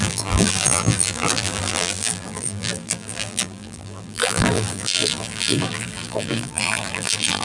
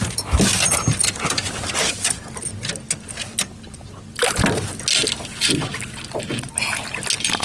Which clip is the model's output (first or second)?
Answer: first